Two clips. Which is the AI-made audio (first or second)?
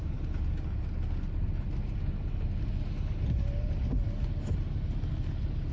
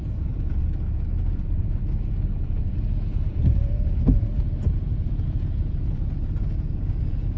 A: second